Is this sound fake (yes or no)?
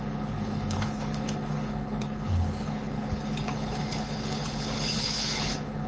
yes